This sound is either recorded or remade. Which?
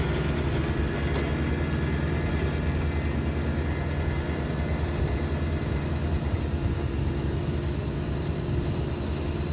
recorded